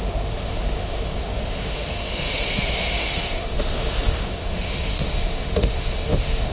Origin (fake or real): fake